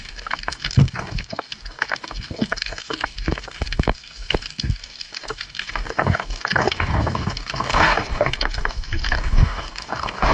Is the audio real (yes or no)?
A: no